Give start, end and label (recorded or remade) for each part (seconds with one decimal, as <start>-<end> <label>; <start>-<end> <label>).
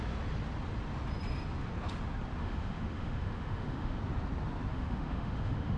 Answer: 0.0-2.4 recorded; 2.4-4.0 remade; 4.0-4.7 recorded; 4.7-5.8 remade